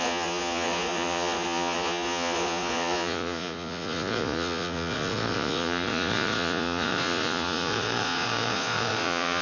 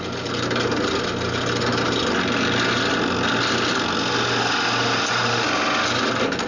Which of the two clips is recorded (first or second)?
second